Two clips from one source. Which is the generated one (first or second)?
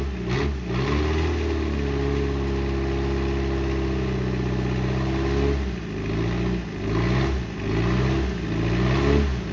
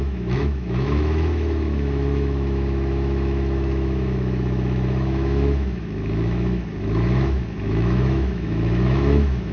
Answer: second